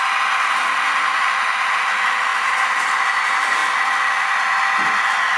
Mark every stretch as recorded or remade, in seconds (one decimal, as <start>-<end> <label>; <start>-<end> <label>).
0.0-5.4 recorded